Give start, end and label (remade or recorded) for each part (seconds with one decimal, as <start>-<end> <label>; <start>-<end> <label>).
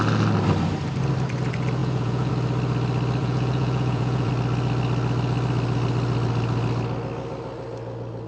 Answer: 0.0-1.8 recorded; 1.8-2.3 remade; 2.3-3.2 recorded; 3.2-4.3 remade; 4.3-8.3 recorded